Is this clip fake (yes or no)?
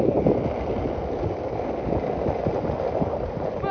no